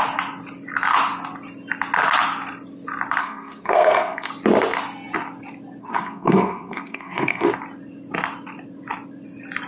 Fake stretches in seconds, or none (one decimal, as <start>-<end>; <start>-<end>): 3.2-4.3; 5.8-7.5